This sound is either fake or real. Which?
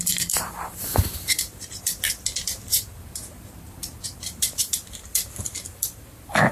fake